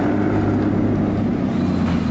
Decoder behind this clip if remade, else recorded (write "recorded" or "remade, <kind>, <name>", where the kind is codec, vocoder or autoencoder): recorded